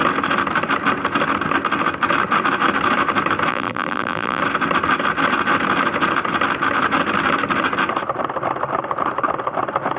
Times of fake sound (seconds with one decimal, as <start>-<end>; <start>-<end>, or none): 3.5-4.4